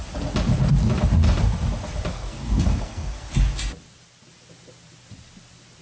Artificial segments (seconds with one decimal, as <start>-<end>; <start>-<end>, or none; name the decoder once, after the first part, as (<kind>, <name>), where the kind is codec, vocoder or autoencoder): 2.1-3.3 (codec, SNAC)